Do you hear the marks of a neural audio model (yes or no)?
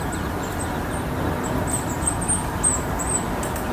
no